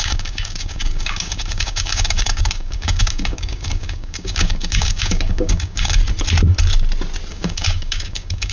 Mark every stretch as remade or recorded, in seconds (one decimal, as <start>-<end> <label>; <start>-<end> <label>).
0.0-6.0 remade; 6.0-7.3 recorded; 7.3-8.5 remade